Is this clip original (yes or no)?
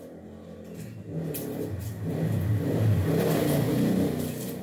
yes